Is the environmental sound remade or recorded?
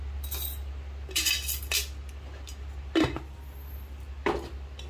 recorded